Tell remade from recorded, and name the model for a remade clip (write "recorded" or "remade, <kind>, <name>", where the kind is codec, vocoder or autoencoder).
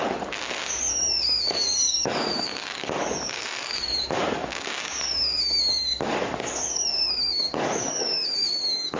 remade, codec, DAC